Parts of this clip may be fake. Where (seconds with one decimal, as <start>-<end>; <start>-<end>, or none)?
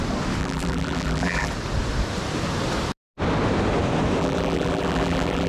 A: 0.4-1.5; 4.2-5.5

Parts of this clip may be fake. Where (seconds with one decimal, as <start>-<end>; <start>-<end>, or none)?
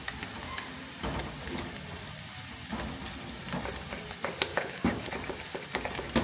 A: 4.5-5.1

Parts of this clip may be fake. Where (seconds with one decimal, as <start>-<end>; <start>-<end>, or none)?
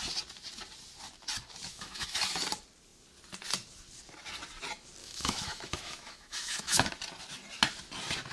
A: 1.7-2.2; 5.0-6.9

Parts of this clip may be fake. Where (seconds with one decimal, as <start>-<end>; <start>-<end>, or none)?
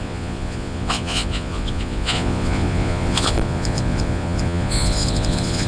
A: 0.0-5.7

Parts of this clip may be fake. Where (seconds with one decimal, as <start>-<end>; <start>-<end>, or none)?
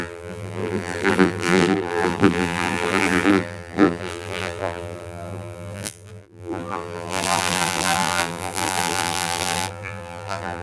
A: 0.0-10.6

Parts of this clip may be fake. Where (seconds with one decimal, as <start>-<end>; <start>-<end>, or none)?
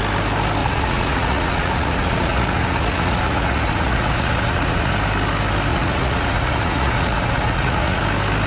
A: 0.6-4.9; 5.7-8.0